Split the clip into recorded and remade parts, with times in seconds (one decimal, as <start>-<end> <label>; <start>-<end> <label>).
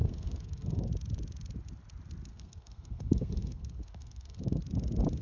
0.0-0.9 remade; 0.9-2.3 recorded; 2.3-4.6 remade; 4.6-5.2 recorded